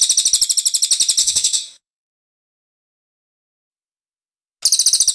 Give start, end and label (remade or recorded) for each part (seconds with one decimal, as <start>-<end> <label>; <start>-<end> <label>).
0.0-1.2 recorded; 1.2-3.7 remade; 3.7-5.1 recorded